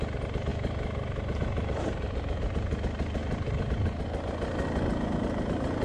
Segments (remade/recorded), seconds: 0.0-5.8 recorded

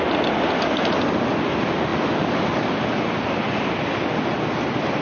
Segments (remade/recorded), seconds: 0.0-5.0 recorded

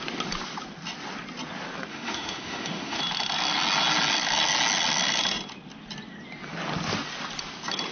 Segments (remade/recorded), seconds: 0.0-1.9 recorded; 1.9-3.0 remade; 3.0-7.9 recorded